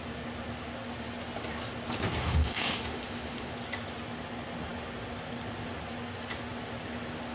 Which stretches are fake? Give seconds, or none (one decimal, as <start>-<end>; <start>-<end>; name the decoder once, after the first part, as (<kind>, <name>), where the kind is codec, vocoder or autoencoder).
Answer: 2.2-3.5 (autoencoder, DAC-VAE)